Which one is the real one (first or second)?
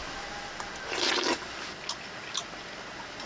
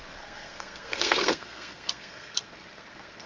first